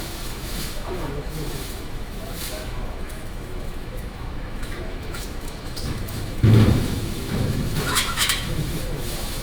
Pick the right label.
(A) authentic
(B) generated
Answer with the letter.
B